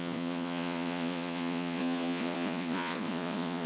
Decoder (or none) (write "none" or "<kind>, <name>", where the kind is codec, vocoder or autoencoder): vocoder, Vocos